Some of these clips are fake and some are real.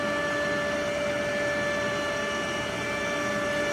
real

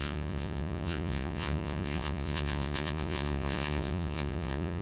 fake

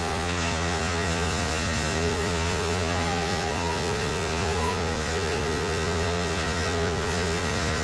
fake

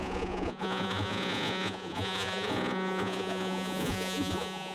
fake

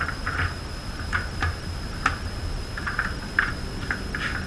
real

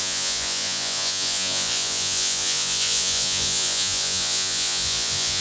fake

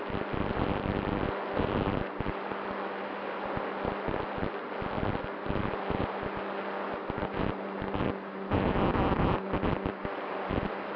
real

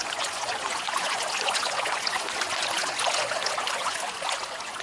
fake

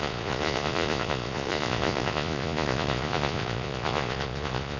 fake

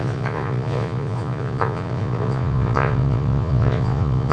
fake